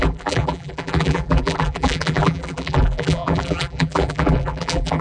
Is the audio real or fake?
fake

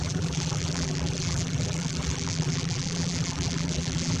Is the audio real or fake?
fake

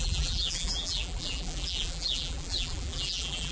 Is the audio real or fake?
fake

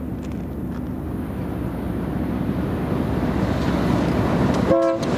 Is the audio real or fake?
real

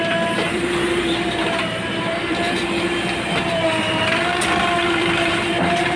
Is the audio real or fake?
fake